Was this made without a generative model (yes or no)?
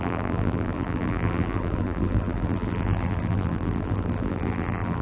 no